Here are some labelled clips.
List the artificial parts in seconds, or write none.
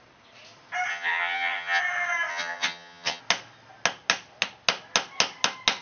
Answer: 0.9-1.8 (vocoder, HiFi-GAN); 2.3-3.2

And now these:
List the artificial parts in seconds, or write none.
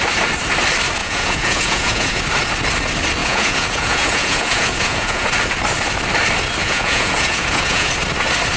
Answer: 1.0-2.2 (vocoder, Vocos); 3.2-5.3; 6.6-7.9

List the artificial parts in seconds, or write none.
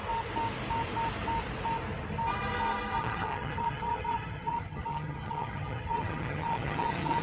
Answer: 3.0-7.2 (vocoder, HiFi-GAN)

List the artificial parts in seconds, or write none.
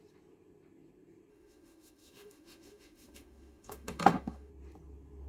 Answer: 1.3-4.5 (autoencoder, DAC-VAE)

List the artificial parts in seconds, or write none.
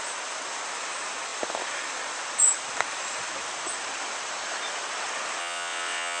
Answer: 5.4-6.2 (vocoder, WaveNeXt)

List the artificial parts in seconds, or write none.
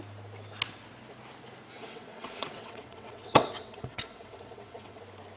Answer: 1.8-5.0 (vocoder, WaveNeXt)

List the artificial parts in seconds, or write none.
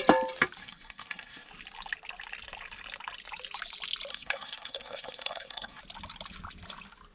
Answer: 0.6-1.5 (codec, SNAC); 4.1-5.8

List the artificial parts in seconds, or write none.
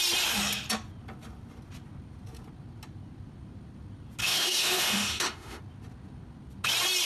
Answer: 4.2-5.6 (autoencoder, DAC-VAE)